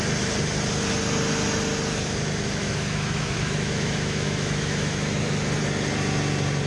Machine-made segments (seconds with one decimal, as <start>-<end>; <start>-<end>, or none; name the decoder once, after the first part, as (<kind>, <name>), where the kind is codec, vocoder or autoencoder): 2.6-5.2 (autoencoder, DAC-VAE)